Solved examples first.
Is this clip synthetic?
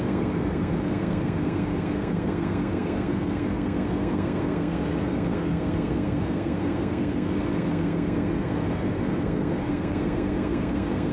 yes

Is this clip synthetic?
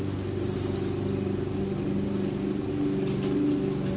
no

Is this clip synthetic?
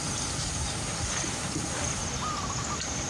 no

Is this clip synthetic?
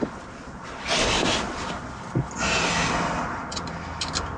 no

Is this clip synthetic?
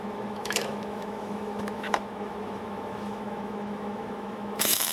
yes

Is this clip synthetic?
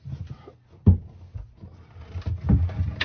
no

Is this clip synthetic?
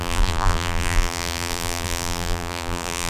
yes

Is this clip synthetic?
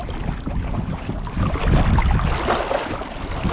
no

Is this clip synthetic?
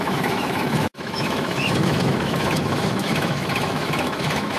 yes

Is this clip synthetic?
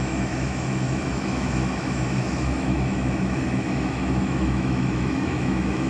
yes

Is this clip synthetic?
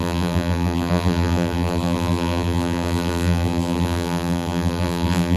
yes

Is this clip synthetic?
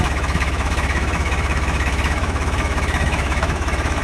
yes